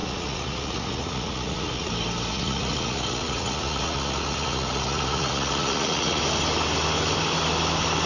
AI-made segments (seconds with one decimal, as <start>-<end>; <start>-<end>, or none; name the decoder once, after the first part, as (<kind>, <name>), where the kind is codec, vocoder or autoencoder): 0.0-1.9 (vocoder, Vocos); 2.3-6.2